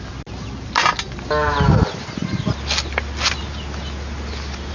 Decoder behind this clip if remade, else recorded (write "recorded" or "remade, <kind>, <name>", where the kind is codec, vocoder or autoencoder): recorded